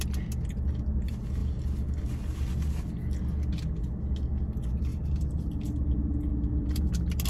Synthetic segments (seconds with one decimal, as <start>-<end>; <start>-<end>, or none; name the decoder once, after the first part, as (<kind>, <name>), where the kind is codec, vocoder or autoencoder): 4.9-5.6 (vocoder, BigVGAN v2)